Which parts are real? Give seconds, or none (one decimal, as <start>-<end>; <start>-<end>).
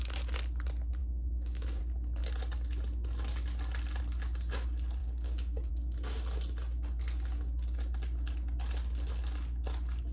0.0-1.0; 1.8-5.0; 5.7-10.1